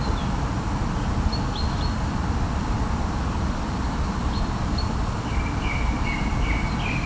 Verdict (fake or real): fake